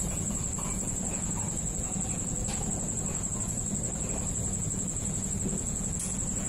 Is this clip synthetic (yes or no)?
yes